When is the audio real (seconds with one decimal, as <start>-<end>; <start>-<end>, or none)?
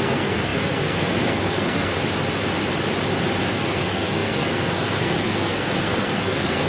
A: 1.9-3.6